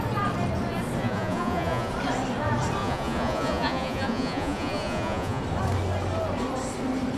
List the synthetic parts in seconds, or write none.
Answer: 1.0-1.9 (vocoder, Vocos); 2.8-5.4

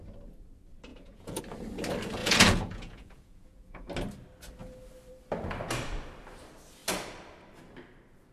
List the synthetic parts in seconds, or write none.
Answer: 0.9-1.4 (vocoder, Vocos); 2.2-3.9